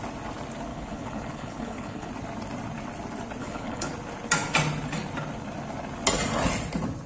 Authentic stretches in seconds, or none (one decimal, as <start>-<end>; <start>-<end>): 0.0-0.7; 2.1-3.4; 3.9-7.1